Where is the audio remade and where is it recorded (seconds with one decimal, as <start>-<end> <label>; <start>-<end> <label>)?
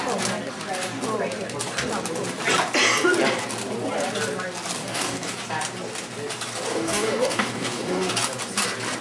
0.0-4.8 recorded; 4.8-5.3 remade; 5.3-6.7 recorded; 6.7-8.1 remade; 8.1-9.0 recorded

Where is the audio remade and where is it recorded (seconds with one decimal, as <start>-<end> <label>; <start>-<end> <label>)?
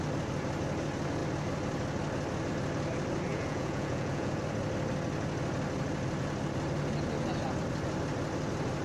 0.0-3.3 recorded; 3.3-4.4 remade; 4.4-8.8 recorded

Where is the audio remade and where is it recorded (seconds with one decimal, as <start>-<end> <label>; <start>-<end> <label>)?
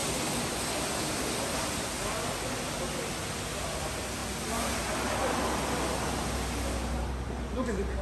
0.0-8.0 recorded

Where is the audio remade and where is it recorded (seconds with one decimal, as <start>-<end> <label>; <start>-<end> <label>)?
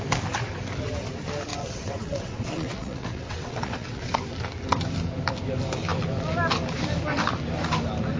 0.0-1.5 recorded; 1.5-4.1 remade; 4.1-8.2 recorded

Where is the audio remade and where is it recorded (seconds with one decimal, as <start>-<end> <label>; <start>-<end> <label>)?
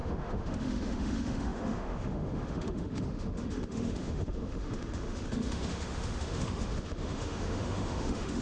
0.0-8.4 remade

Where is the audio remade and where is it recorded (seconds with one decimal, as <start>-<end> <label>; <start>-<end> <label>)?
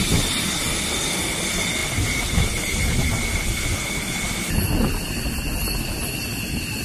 0.0-6.8 recorded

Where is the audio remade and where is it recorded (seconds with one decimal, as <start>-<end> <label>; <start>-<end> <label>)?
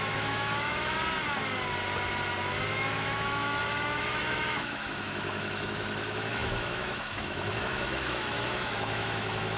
0.0-1.0 remade; 1.0-2.7 recorded; 2.7-9.6 remade